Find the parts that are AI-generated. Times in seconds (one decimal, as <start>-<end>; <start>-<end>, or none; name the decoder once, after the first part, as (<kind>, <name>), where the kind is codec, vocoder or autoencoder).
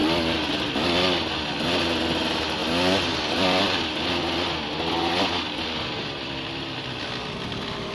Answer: 2.6-7.0 (vocoder, BigVGAN v2)